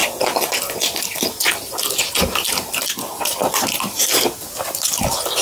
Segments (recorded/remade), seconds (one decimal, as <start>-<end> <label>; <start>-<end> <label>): 0.0-5.4 recorded